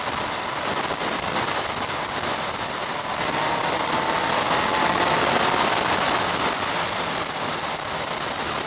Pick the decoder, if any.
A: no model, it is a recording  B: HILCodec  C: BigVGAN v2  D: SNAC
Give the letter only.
A